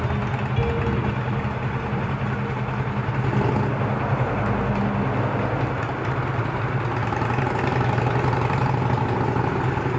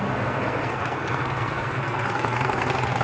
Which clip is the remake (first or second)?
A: second